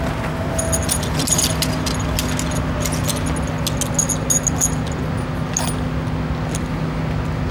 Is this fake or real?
real